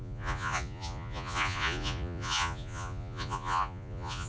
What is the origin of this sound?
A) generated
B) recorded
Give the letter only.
A